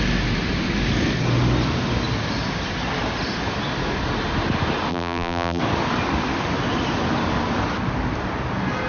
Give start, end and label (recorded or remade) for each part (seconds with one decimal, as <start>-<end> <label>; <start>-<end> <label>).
0.0-4.9 recorded; 4.9-5.6 remade; 5.6-8.9 recorded